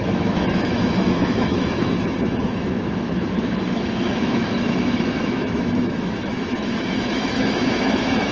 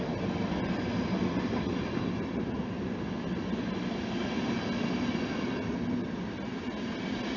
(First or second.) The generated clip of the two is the first